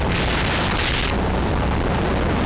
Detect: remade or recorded recorded